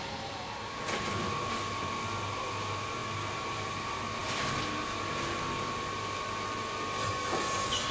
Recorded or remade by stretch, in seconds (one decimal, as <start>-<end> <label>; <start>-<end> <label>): 0.0-3.0 recorded; 3.0-3.7 remade; 3.7-7.9 recorded